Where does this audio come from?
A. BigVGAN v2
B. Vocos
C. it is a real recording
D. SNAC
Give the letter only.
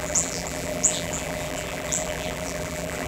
A